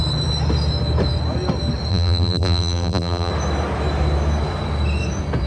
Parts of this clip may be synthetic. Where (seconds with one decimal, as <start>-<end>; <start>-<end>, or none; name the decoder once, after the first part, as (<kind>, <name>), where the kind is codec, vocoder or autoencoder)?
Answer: 1.9-3.3 (vocoder, BigVGAN v2)